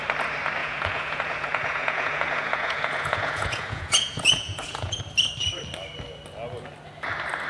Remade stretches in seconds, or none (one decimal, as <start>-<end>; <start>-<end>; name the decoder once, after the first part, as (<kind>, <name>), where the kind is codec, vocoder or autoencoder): 0.6-5.0 (vocoder, Vocos)